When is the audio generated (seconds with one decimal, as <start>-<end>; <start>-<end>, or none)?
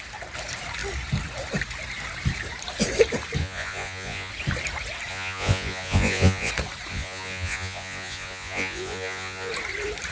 3.4-4.3; 5.1-6.5; 6.9-9.5